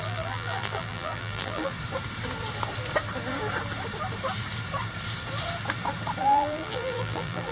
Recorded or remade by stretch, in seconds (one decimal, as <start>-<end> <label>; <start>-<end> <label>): 0.0-1.7 remade; 1.7-6.2 recorded; 6.2-7.5 remade